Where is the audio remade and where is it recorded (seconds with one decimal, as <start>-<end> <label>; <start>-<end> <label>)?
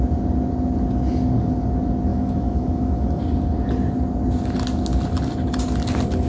0.0-2.1 recorded; 2.1-3.2 remade; 3.2-6.3 recorded